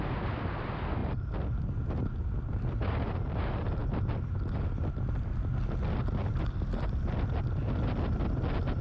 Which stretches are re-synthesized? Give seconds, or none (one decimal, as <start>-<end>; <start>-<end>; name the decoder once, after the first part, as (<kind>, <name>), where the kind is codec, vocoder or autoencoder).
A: none